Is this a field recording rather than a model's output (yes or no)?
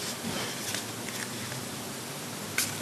yes